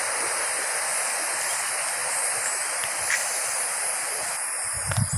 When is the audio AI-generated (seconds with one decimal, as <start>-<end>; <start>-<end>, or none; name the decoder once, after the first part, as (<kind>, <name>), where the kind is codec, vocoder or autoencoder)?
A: none